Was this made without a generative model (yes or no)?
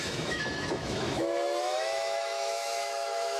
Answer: no